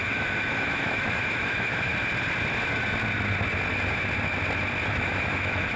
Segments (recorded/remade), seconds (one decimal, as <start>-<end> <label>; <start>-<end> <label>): 0.0-1.9 remade; 1.9-4.9 recorded; 4.9-5.8 remade